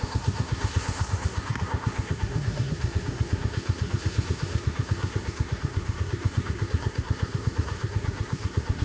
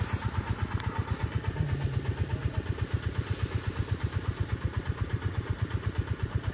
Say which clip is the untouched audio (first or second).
second